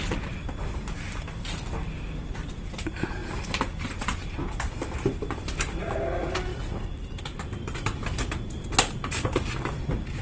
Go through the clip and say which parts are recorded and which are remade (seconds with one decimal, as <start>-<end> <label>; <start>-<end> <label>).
0.0-6.5 recorded; 6.5-7.2 remade; 7.2-10.2 recorded